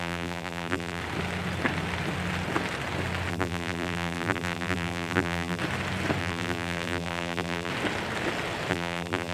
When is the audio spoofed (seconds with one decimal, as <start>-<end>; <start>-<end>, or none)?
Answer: 0.0-1.0; 3.3-5.6; 6.2-7.7; 8.7-9.3